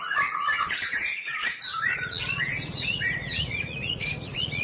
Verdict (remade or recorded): remade